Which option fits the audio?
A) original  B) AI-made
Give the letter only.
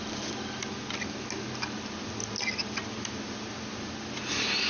A